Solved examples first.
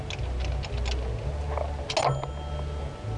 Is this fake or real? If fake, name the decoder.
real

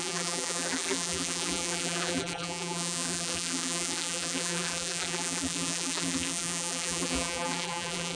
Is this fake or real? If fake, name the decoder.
fake, vocoder, BigVGAN v2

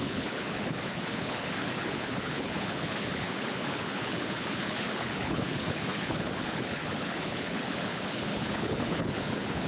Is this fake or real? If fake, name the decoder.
fake, codec, HILCodec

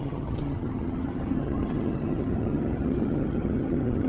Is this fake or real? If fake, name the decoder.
fake, vocoder, HiFi-GAN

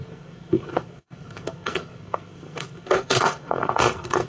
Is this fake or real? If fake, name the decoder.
fake, codec, SNAC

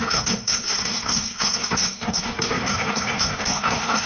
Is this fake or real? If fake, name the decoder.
fake, codec, SNAC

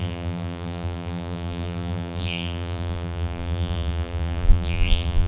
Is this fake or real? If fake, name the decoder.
fake, vocoder, BigVGAN v2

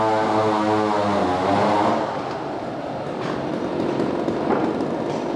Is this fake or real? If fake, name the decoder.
real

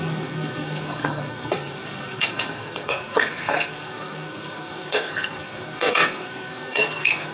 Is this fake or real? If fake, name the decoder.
fake, codec, SNAC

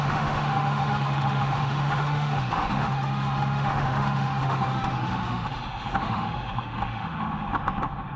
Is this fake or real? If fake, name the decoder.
fake, autoencoder, DAC-VAE